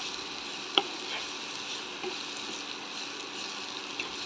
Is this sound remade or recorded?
recorded